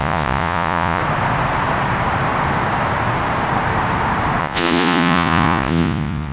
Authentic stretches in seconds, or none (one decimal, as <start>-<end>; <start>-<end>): 1.0-4.4